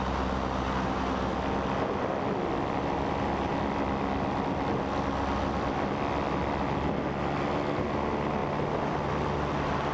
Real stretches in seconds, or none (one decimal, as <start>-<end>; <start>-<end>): 0.0-9.9